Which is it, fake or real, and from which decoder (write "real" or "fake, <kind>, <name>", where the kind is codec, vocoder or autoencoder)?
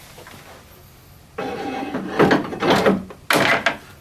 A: real